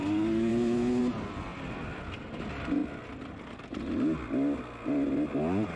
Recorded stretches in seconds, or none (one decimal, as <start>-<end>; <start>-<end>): 0.0-0.5; 1.0-5.8